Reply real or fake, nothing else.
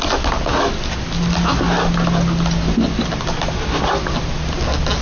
real